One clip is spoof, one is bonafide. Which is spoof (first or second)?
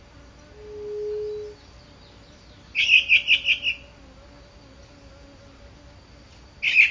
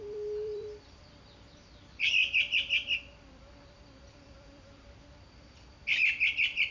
second